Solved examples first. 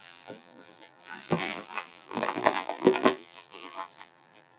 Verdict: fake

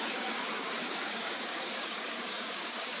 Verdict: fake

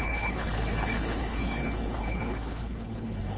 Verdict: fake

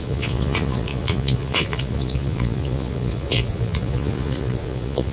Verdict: fake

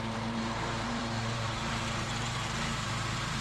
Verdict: fake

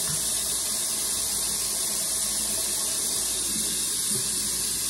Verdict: real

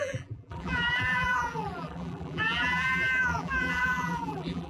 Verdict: fake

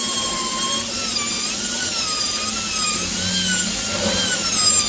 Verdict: real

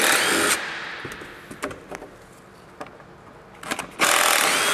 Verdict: real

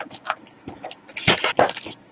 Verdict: real